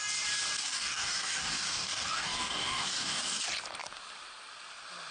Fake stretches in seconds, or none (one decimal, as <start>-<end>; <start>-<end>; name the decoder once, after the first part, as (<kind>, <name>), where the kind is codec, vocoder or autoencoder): 0.6-3.4 (codec, DAC)

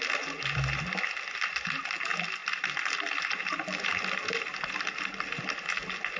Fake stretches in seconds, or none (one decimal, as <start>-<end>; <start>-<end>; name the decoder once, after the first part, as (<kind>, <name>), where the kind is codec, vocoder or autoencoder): none

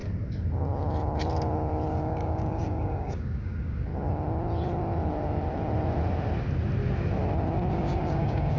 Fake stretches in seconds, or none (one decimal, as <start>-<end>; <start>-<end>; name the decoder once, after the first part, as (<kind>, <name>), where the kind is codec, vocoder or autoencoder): 1.9-3.9 (codec, DAC); 7.7-8.6

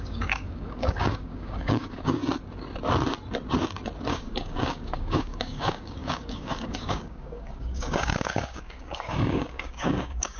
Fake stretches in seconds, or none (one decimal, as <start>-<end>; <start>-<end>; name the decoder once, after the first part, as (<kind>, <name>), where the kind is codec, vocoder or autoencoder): 0.0-2.2 (codec, DAC); 4.1-10.4

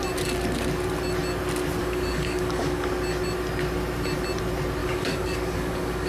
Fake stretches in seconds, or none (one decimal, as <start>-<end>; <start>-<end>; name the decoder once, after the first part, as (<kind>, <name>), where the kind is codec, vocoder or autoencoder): 1.8-2.9 (codec, DAC); 4.8-6.1

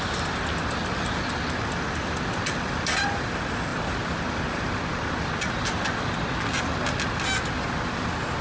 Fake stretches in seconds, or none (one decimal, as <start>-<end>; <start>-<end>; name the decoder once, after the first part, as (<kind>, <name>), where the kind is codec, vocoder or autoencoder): none

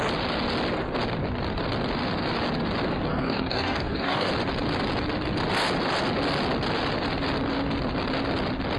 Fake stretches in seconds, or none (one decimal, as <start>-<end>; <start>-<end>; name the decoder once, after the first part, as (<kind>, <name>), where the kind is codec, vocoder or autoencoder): 3.1-4.3 (codec, DAC)